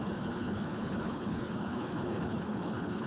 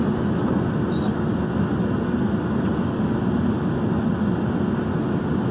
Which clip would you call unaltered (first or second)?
second